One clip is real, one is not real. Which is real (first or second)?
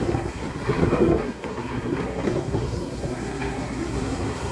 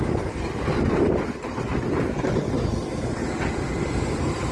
second